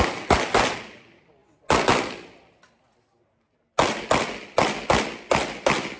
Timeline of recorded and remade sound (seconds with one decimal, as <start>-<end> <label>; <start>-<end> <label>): 0.0-6.0 recorded